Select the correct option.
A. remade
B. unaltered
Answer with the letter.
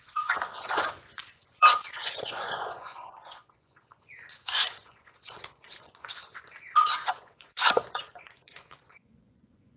A